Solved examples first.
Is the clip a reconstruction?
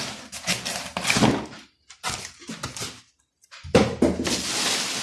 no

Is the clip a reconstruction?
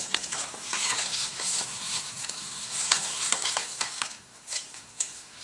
yes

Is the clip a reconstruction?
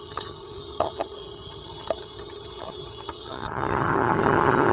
yes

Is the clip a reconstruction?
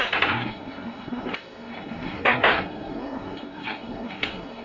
yes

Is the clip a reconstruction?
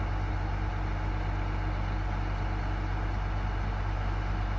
no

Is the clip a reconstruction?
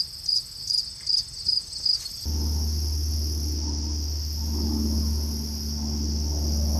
no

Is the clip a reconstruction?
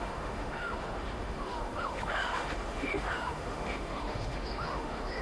yes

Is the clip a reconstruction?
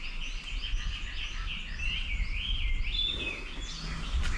no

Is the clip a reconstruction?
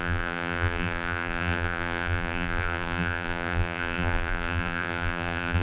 yes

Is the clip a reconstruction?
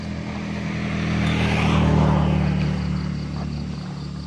no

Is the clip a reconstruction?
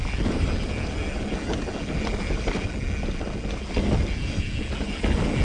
no